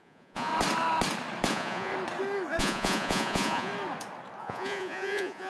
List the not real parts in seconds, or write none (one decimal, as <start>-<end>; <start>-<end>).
0.0-0.5; 1.5-1.9; 2.6-3.7; 4.4-5.5